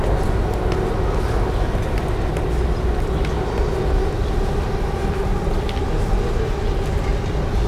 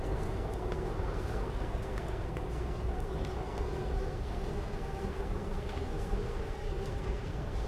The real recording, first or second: first